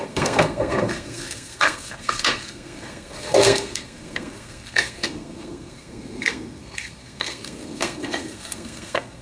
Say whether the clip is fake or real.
fake